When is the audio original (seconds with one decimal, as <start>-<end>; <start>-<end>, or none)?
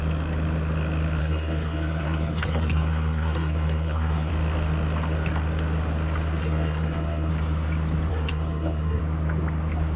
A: 0.0-1.2; 4.3-6.4; 7.3-8.1; 9.0-10.0